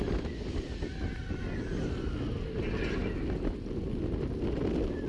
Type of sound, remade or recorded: recorded